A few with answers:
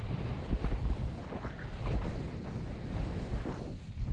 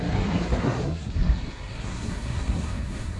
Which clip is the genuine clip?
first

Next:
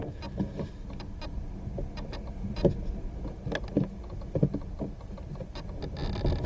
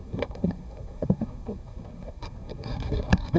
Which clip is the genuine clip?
first